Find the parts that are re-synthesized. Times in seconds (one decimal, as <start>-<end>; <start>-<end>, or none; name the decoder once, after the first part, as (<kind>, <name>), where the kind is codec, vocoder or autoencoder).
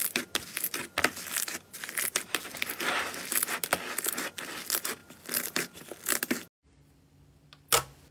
none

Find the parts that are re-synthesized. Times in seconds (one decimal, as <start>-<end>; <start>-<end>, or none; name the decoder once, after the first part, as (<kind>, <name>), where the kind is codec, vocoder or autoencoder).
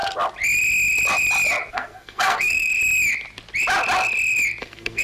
1.7-2.7 (codec, SNAC); 4.6-5.0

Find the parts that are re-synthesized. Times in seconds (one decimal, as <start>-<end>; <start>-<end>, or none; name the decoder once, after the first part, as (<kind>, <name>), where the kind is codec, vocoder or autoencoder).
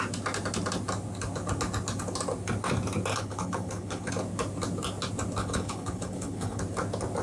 3.1-4.1 (codec, HILCodec); 5.4-6.6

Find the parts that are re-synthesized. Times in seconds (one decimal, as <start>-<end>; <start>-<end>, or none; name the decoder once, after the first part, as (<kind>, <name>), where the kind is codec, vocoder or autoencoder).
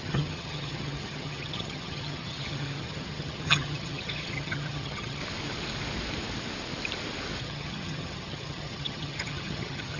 0.0-5.2 (vocoder, HiFi-GAN); 7.4-10.0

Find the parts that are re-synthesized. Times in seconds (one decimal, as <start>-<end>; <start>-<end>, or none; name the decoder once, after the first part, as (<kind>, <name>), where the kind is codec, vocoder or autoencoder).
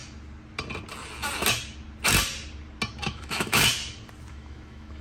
3.0-3.7 (autoencoder, DAC-VAE); 4.3-5.0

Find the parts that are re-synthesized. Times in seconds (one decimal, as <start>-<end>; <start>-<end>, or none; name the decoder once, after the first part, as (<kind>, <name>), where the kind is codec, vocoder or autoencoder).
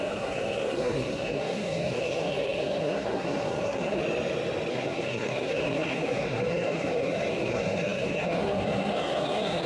0.0-4.0 (codec, SNAC); 4.7-9.7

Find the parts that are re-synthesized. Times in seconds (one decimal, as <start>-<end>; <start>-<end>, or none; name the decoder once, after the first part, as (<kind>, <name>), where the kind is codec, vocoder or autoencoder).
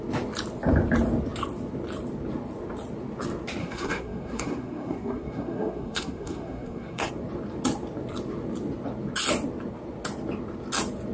3.6-7.1 (codec, SNAC)